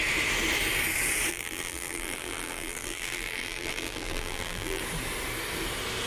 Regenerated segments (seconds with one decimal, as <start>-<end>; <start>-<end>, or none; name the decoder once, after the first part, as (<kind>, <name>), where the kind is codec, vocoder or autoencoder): 1.3-4.8 (vocoder, BigVGAN v2)